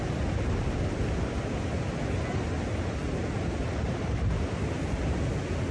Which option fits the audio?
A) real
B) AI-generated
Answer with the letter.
A